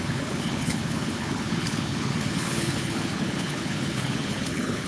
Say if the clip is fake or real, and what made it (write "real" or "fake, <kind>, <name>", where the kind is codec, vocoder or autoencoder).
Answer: fake, codec, HILCodec